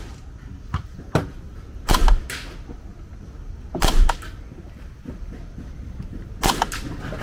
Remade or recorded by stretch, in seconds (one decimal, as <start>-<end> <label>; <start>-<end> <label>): 0.0-7.2 recorded